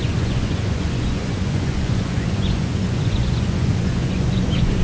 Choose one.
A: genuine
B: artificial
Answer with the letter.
B